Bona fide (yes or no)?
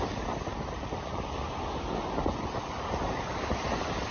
yes